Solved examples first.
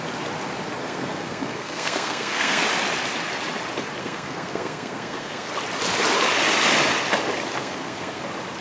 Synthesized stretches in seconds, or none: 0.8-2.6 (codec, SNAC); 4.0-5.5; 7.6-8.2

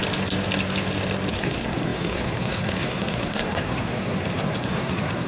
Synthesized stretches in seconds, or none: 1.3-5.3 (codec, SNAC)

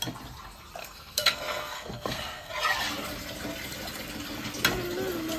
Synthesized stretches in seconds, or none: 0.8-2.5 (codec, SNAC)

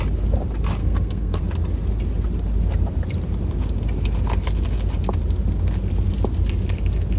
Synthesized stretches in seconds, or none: 0.8-1.4 (codec, SNAC)

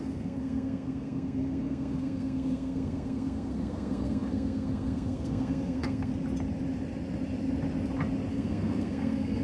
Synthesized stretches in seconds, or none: 0.0-6.1 (codec, SNAC); 8.3-9.4

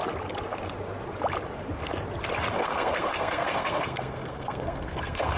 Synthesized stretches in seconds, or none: 2.5-5.4 (codec, SNAC)

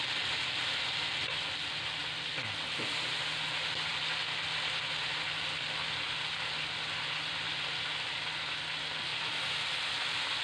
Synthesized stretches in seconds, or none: none